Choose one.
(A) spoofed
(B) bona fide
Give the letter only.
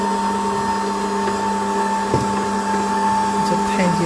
B